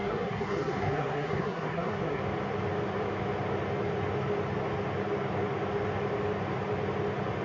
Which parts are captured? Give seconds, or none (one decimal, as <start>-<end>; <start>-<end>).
2.2-7.4